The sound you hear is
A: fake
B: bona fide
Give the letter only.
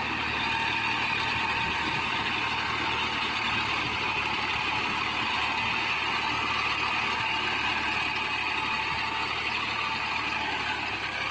B